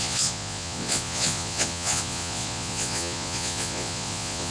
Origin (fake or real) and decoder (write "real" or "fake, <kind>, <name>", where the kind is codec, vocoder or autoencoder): fake, vocoder, Vocos